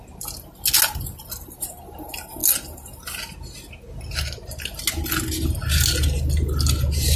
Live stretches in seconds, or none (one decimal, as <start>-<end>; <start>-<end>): 0.0-7.2